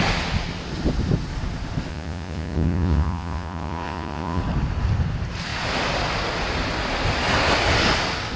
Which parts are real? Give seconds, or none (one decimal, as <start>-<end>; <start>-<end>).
0.0-1.9; 4.4-8.4